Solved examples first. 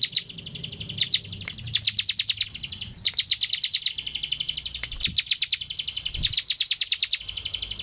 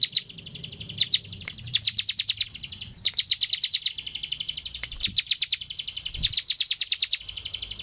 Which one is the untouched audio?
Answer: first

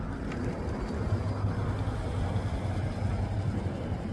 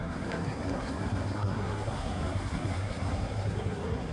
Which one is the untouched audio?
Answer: first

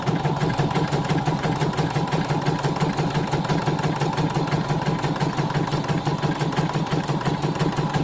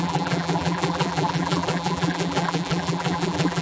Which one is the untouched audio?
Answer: first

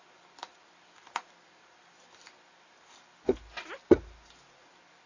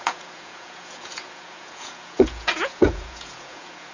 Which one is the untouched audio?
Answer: first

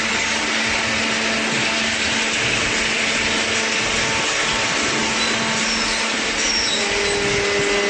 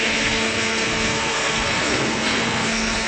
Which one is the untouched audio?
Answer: first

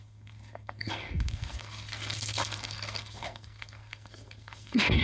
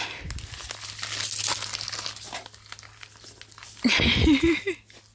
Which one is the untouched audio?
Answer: second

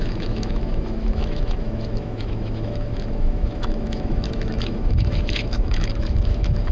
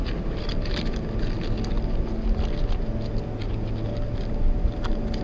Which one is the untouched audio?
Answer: second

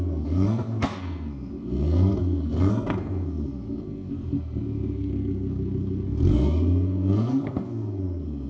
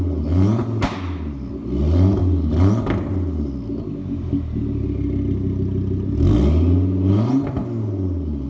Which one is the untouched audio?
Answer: second